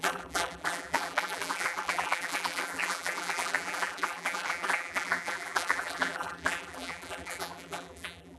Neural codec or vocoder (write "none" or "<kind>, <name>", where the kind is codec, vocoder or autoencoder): vocoder, BigVGAN v2